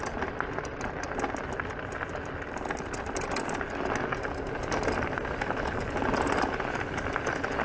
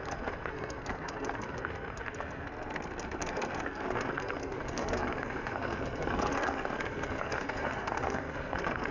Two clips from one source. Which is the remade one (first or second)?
second